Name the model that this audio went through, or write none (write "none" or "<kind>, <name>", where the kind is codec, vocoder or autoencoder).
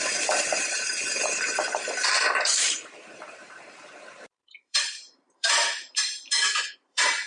vocoder, BigVGAN v2